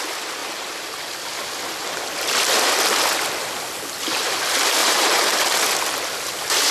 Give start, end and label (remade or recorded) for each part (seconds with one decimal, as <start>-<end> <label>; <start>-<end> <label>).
0.0-4.8 recorded; 4.8-5.3 remade; 5.3-6.7 recorded